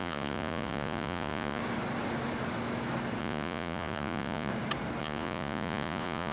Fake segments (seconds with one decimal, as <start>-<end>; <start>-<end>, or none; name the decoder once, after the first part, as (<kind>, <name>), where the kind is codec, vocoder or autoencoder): 0.0-1.6 (vocoder, Vocos); 3.2-4.5; 5.0-6.3